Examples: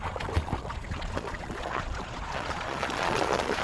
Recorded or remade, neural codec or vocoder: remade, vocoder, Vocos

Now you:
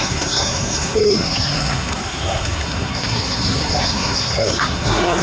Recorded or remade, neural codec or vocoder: remade, codec, SNAC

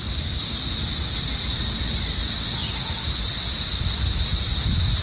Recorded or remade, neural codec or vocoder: recorded